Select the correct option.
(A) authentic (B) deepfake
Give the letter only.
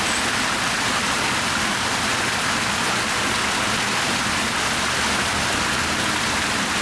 A